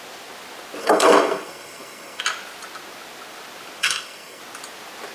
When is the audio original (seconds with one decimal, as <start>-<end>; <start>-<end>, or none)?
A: 0.0-0.8; 2.2-3.8; 4.4-5.1